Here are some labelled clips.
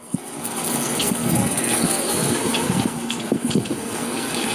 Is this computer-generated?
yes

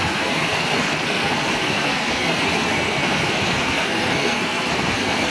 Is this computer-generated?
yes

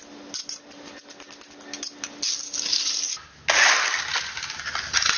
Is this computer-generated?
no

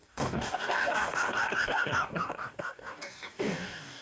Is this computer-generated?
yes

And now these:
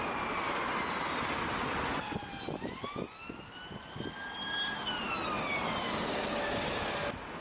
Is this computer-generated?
no